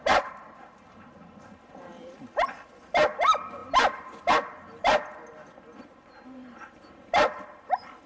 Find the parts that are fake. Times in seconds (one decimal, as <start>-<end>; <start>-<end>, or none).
none